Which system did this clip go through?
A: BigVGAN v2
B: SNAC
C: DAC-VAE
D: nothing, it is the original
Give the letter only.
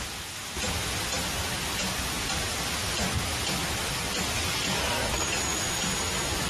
D